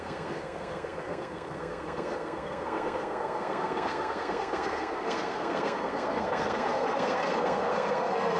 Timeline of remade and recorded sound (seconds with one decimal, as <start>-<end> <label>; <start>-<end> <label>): 0.0-8.4 remade